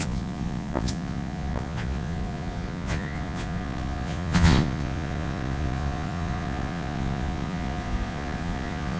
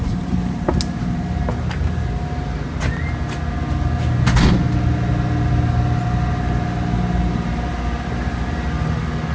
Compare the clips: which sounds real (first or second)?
second